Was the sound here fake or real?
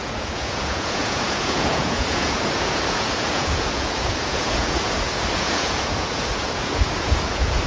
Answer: fake